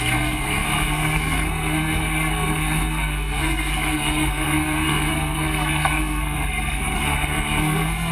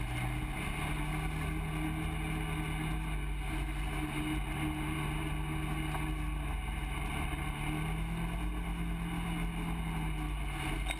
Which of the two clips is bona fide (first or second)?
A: second